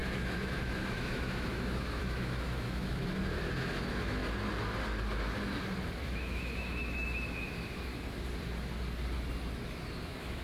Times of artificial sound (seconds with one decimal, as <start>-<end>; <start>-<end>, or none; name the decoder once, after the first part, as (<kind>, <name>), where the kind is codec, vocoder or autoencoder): 0.0-4.2 (autoencoder, DAC-VAE); 6.0-7.9; 10.0-10.4